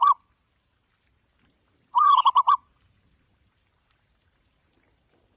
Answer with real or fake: fake